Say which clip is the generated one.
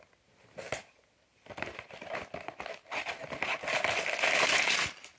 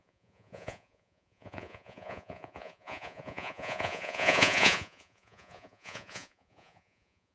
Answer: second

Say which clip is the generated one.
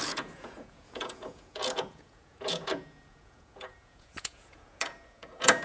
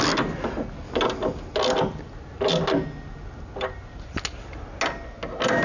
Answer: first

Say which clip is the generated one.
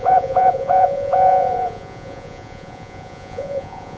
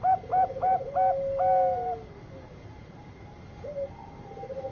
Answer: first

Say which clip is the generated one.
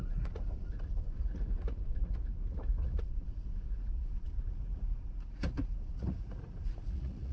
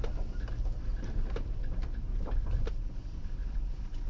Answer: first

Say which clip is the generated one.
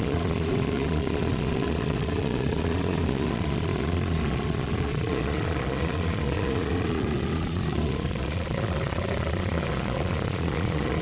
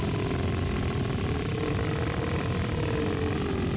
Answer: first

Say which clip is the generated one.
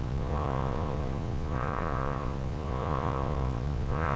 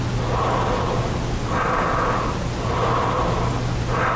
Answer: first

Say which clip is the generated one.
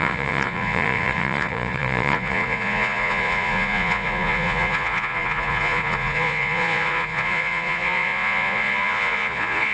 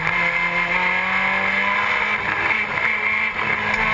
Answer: first